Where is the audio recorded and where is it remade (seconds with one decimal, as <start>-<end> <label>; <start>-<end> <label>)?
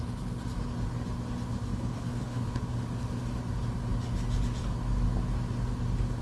0.0-1.7 recorded; 1.7-2.6 remade; 2.6-6.2 recorded